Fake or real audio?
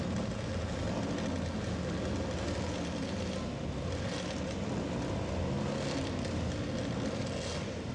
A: real